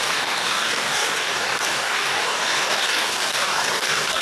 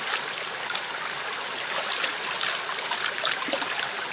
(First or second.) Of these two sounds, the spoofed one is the first